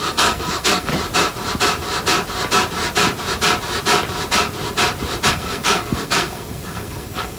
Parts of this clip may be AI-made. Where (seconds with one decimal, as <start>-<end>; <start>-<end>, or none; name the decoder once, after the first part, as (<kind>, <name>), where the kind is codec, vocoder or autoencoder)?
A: 0.0-0.9 (codec, SNAC); 5.3-7.4